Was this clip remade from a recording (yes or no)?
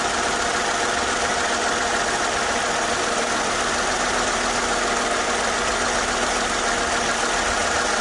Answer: no